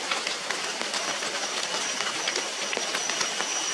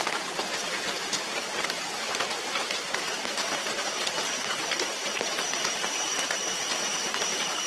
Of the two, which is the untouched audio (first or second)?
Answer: first